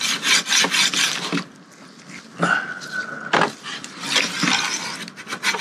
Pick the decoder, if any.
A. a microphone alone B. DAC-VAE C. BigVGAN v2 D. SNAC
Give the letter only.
A